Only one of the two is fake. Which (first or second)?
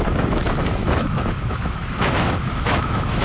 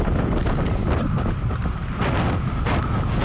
first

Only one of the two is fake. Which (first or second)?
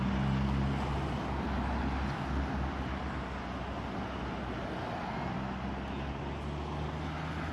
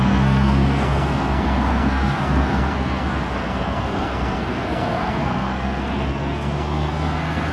second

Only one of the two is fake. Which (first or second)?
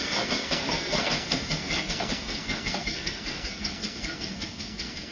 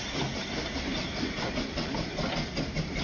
first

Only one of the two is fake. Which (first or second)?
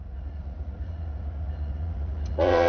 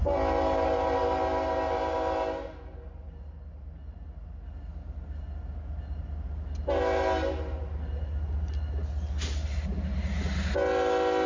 first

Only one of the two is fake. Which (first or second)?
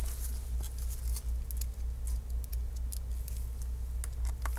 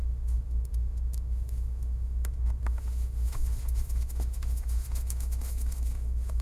second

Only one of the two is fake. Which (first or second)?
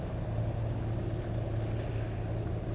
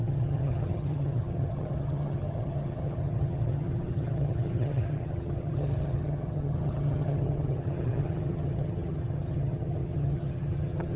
second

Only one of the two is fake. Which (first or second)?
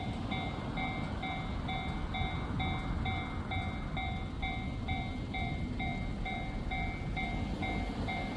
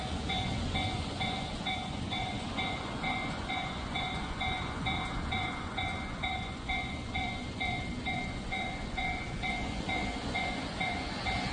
second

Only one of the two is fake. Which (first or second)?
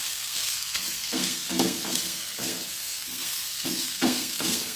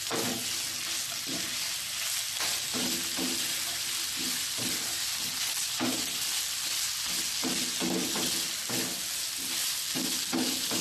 first